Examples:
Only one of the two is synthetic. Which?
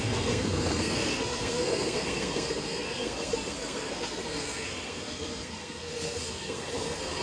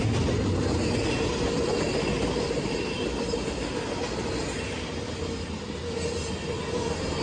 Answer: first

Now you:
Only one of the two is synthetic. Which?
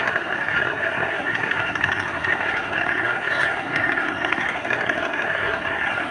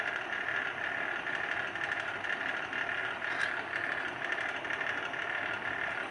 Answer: first